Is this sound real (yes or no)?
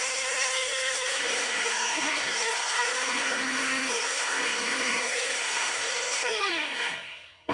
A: no